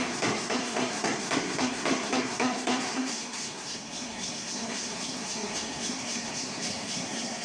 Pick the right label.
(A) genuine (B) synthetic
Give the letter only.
B